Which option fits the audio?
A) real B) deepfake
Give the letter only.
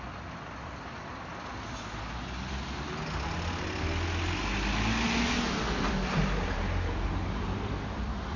A